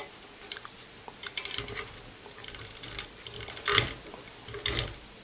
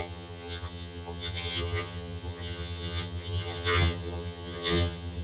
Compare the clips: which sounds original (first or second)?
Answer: first